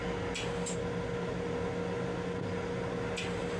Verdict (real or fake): real